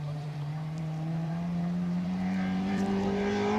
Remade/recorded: remade